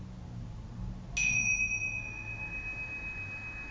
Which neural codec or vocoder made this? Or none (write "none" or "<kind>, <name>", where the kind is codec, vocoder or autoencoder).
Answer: none